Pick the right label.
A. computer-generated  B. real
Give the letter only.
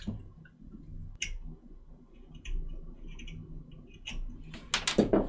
B